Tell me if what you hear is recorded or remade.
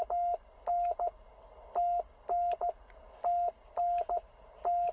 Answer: recorded